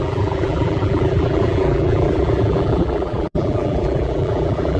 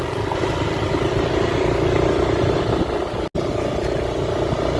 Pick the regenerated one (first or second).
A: first